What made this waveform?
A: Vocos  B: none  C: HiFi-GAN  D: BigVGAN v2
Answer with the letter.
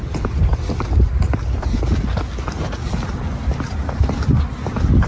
B